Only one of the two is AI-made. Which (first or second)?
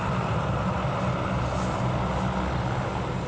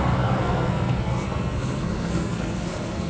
second